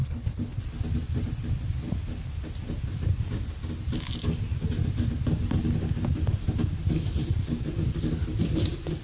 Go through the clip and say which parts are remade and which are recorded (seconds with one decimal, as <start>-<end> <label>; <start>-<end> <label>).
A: 0.0-0.6 remade; 0.6-9.0 recorded